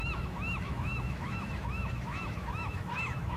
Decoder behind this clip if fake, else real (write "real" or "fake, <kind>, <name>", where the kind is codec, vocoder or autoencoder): fake, autoencoder, DAC-VAE